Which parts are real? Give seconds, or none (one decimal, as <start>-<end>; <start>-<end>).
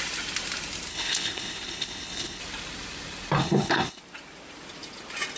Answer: 0.0-0.9; 2.4-3.4; 4.0-5.4